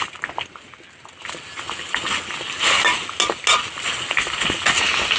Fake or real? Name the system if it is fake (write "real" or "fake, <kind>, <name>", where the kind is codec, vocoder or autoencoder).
real